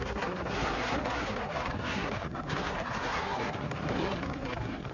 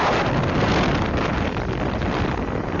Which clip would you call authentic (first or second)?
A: second